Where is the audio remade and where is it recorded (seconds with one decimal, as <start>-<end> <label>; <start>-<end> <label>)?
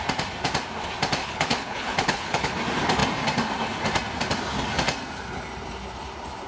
0.0-1.2 recorded; 1.2-2.5 remade; 2.5-6.5 recorded